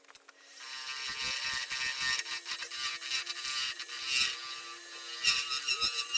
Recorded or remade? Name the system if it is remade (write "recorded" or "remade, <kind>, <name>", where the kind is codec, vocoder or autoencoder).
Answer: recorded